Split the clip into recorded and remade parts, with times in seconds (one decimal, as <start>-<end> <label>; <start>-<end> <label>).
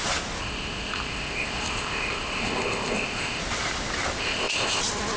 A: 0.0-0.4 recorded; 0.4-3.4 remade; 3.4-4.2 recorded; 4.2-4.8 remade; 4.8-5.2 recorded